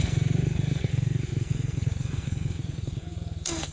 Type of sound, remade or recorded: remade